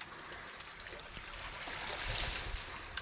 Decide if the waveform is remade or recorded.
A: recorded